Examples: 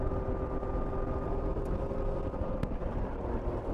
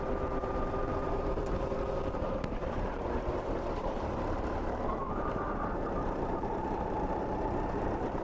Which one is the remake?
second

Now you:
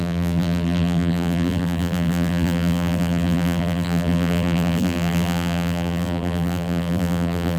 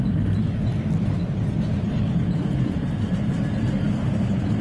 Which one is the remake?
first